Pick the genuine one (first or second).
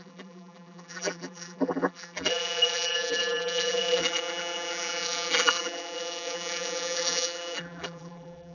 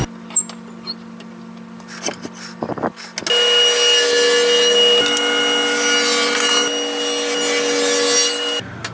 second